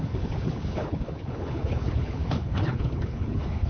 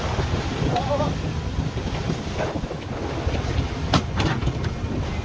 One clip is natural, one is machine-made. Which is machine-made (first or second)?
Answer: first